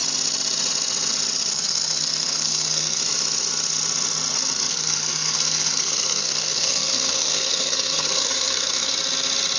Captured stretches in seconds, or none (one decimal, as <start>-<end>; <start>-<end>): 0.0-1.5; 3.0-4.7; 8.9-9.6